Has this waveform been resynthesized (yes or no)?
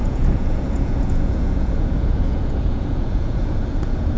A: yes